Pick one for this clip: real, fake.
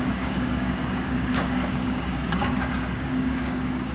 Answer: fake